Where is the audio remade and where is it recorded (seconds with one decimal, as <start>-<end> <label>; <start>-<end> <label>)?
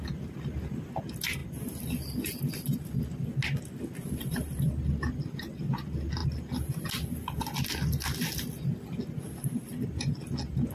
0.0-10.7 recorded